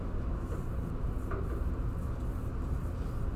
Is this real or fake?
real